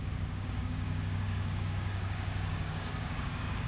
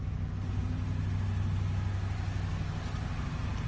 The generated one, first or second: first